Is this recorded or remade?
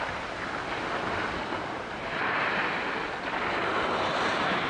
recorded